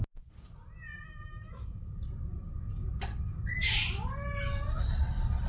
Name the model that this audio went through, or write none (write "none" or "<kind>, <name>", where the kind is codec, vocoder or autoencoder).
none